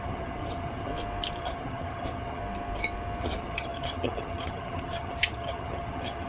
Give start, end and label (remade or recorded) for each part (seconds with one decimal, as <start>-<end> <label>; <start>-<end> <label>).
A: 0.0-0.9 remade; 0.9-1.4 recorded; 1.4-2.4 remade; 2.4-3.2 recorded; 3.2-6.3 remade